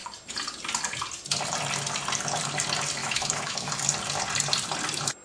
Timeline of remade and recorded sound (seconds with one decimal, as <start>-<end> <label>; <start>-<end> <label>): 0.0-3.0 recorded; 3.0-3.7 remade; 3.7-5.2 recorded

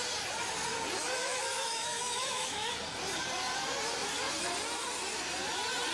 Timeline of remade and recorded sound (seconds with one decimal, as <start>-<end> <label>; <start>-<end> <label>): 0.0-1.2 recorded; 1.2-2.7 remade; 2.7-5.9 recorded

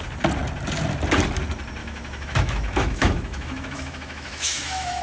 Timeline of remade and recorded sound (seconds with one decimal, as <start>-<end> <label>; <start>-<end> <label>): 0.0-1.8 recorded; 1.8-5.0 remade

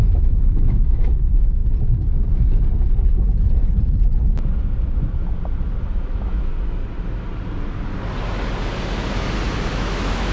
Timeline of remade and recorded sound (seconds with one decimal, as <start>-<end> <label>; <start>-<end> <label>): 0.0-1.6 remade; 1.6-5.8 recorded; 5.8-6.5 remade; 6.5-9.7 recorded; 9.7-10.3 remade

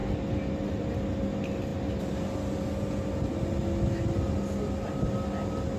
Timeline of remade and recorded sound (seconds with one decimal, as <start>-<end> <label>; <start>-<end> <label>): 0.0-5.8 recorded

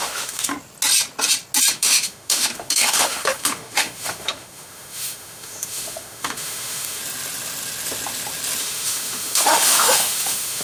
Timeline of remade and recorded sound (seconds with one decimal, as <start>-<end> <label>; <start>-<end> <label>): 0.0-0.5 remade; 0.5-1.7 recorded; 1.7-7.0 remade; 7.0-8.6 recorded; 8.6-10.6 remade

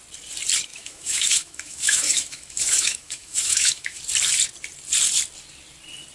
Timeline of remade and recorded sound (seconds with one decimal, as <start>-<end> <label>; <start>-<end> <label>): 0.0-0.7 recorded; 0.7-4.0 remade; 4.0-6.1 recorded